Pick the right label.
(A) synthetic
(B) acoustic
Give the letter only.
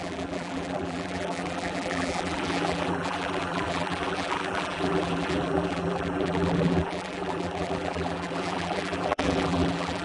A